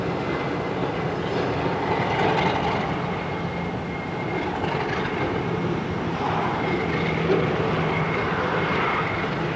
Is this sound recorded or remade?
recorded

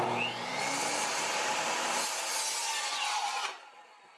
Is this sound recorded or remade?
recorded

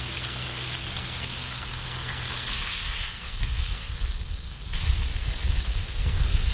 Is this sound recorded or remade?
remade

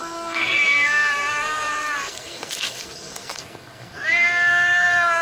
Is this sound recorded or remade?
remade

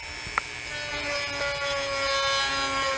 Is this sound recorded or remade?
recorded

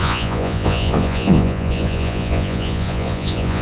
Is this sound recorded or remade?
remade